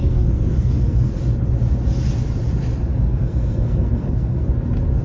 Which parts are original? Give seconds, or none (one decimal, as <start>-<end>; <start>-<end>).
1.2-2.9; 4.5-5.0